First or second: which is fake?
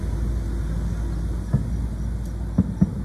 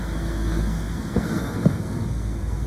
second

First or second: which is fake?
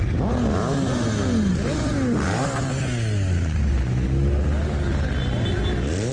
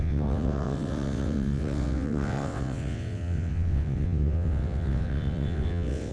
second